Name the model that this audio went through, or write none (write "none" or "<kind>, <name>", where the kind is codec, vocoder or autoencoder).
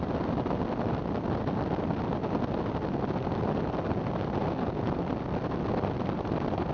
none